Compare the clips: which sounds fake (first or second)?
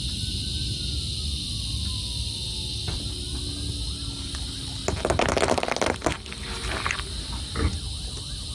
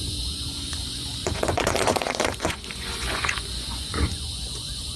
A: second